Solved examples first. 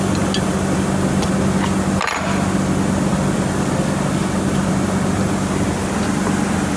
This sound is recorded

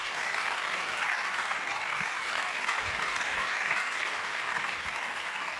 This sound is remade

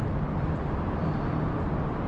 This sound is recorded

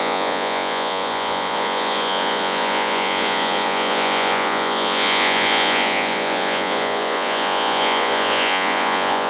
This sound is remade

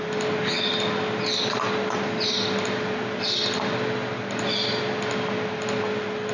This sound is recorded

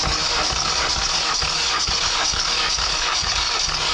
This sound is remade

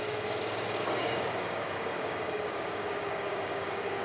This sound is remade